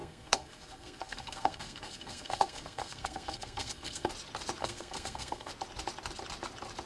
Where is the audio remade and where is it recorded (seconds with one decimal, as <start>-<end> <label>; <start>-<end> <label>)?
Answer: 0.0-4.1 remade; 4.1-4.6 recorded; 4.6-5.5 remade; 5.5-6.9 recorded